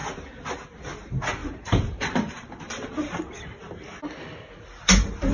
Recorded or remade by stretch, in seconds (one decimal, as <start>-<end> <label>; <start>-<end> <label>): 0.0-1.4 recorded; 1.4-3.2 remade; 3.2-5.3 recorded